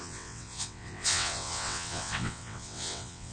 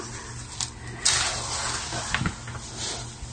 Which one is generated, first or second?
first